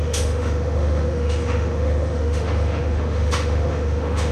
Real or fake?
fake